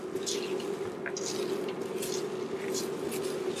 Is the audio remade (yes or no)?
no